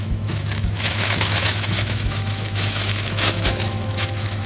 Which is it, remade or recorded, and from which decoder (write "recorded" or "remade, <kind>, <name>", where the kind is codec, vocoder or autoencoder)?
remade, autoencoder, DAC-VAE